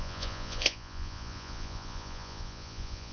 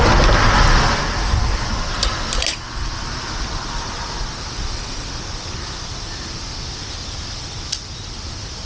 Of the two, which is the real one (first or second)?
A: second